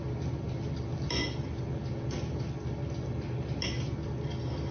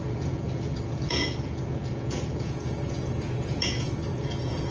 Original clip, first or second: first